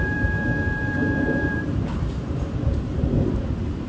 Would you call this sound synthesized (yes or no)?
yes